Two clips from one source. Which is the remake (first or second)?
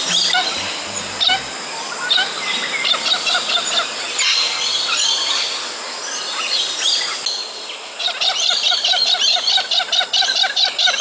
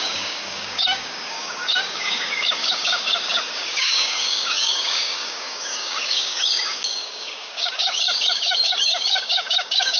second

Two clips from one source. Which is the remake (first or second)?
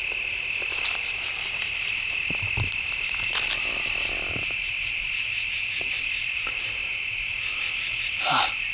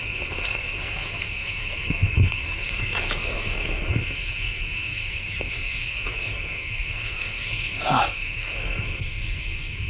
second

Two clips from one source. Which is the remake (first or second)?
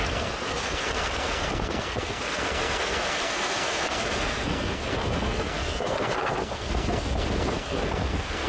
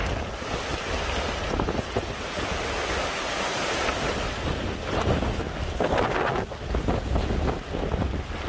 first